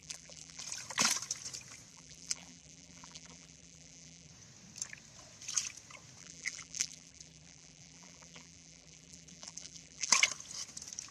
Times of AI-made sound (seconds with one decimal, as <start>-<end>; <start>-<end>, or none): 0.0-0.6; 1.9-4.3; 6.2-10.1